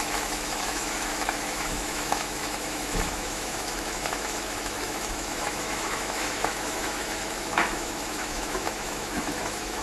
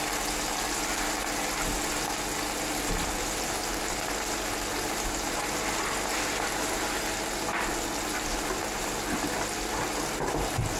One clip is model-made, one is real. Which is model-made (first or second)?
first